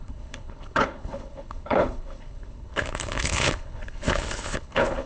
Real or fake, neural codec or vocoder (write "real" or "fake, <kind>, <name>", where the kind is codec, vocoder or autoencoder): fake, codec, HILCodec